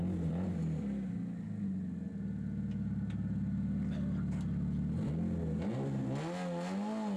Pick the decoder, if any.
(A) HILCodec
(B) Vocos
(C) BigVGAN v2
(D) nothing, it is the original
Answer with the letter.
D